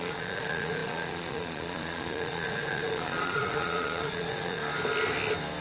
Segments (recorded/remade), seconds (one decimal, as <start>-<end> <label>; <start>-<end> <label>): 0.0-4.6 remade; 4.6-5.6 recorded